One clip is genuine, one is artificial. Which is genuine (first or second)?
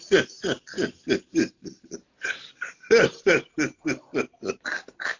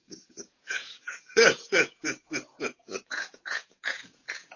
first